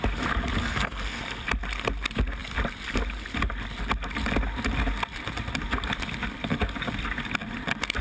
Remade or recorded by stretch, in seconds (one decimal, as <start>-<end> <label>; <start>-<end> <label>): 0.0-0.6 recorded; 0.6-1.2 remade; 1.2-8.0 recorded